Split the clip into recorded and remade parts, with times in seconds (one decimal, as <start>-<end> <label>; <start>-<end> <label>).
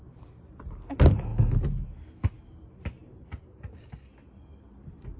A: 0.0-5.2 recorded